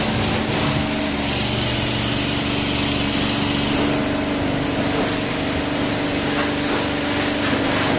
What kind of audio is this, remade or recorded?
recorded